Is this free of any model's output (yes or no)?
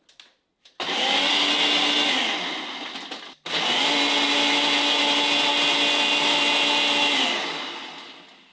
yes